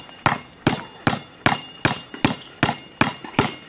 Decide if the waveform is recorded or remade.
recorded